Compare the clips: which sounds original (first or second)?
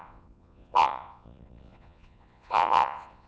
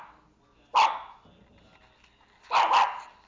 second